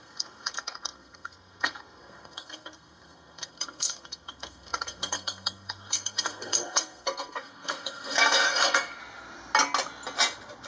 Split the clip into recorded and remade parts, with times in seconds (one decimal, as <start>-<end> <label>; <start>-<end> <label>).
0.0-9.0 remade; 9.0-10.7 recorded

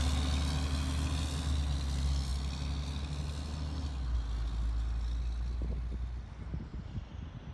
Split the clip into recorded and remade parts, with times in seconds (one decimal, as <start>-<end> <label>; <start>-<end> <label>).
0.0-6.7 recorded; 6.7-7.5 remade

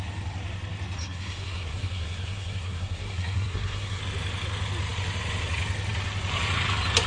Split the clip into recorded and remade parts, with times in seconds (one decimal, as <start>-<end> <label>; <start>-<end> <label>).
0.0-1.0 recorded; 1.0-4.0 remade; 4.0-7.1 recorded

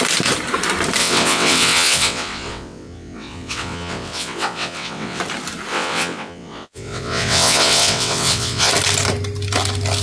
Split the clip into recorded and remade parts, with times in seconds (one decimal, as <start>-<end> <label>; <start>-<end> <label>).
0.0-1.0 recorded; 1.0-5.2 remade; 5.2-5.7 recorded; 5.7-8.7 remade; 8.7-10.0 recorded

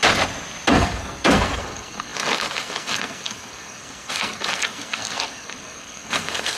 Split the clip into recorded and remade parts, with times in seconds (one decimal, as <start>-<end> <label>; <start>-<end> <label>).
0.0-0.7 recorded; 0.7-6.6 remade

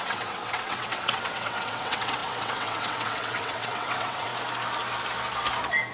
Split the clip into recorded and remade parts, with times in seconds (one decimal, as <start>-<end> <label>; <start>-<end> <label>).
0.0-4.3 remade; 4.3-5.9 recorded